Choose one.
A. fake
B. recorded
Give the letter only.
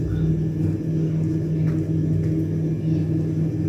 B